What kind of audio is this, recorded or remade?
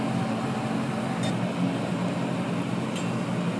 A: recorded